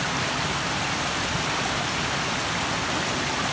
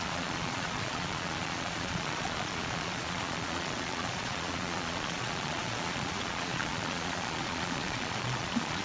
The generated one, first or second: second